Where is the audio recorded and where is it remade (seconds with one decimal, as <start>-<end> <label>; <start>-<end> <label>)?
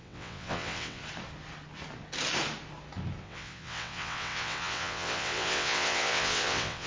0.0-1.0 remade; 1.0-3.2 recorded; 3.2-6.9 remade